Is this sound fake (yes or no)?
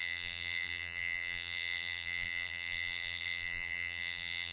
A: yes